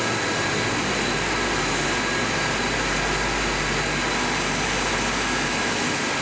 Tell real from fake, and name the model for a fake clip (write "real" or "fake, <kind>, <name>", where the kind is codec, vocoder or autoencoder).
real